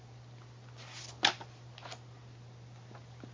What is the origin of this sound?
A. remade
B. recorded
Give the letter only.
B